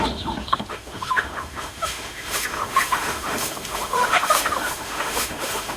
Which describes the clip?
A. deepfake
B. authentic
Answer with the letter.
A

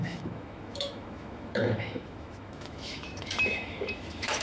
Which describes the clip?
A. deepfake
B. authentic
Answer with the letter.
A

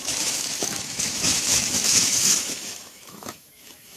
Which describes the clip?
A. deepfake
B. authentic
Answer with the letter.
A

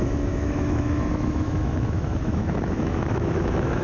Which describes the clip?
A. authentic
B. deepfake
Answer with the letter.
B